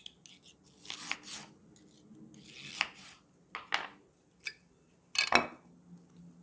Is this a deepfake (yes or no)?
no